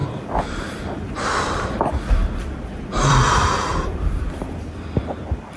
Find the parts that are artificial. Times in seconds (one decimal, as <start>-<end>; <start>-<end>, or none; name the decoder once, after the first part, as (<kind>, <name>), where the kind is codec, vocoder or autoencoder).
0.0-1.8 (vocoder, BigVGAN v2); 2.2-3.3; 3.7-5.6